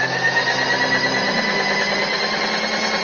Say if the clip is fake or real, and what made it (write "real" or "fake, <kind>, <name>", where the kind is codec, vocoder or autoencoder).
real